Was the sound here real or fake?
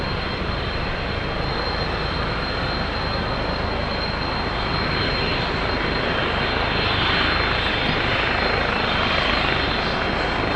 real